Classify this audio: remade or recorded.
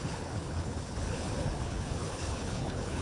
remade